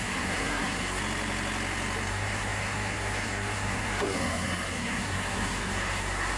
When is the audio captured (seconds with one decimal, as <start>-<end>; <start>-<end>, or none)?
1.0-2.1